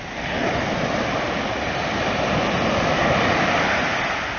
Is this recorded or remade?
recorded